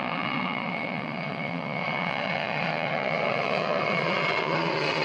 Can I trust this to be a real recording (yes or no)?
no